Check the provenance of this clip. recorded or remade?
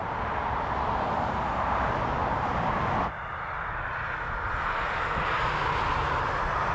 recorded